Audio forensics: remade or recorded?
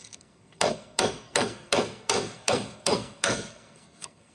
remade